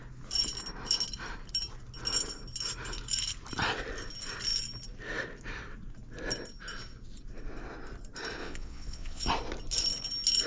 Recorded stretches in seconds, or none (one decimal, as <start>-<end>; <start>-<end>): 0.0-8.4; 9.3-10.5